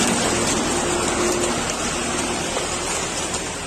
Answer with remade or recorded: recorded